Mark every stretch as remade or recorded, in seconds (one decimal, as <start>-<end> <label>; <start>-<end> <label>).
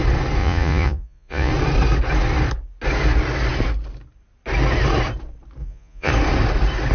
0.0-0.4 recorded; 0.4-1.5 remade; 1.5-5.6 recorded; 5.6-6.1 remade; 6.1-6.9 recorded